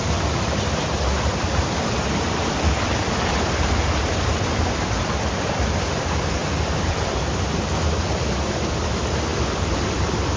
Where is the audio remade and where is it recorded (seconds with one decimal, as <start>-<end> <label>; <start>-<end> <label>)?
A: 0.0-10.4 remade